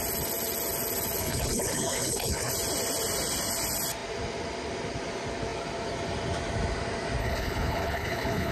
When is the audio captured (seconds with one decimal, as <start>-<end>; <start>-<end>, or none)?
0.0-1.2; 2.5-7.2